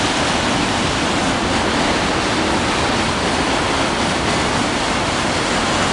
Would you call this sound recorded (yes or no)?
yes